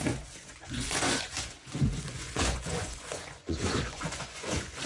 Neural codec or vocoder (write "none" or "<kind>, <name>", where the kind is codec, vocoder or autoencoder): vocoder, Vocos